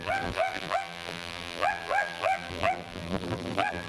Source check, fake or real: fake